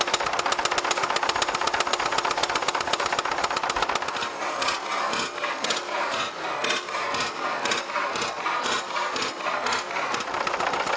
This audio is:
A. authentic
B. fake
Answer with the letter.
A